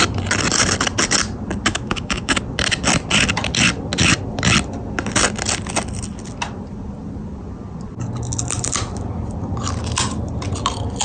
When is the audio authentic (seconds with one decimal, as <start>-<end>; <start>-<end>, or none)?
0.0-1.7; 2.4-11.0